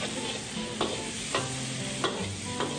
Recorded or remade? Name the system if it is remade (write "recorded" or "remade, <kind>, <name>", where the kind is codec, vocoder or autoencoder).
recorded